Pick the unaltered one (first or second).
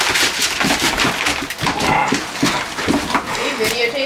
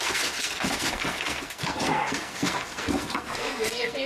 first